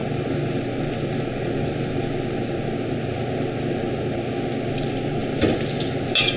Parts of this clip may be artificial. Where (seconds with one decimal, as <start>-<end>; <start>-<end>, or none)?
none